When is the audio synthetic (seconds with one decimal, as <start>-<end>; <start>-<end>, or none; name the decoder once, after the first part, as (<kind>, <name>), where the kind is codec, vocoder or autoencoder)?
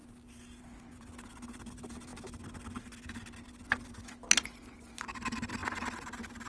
none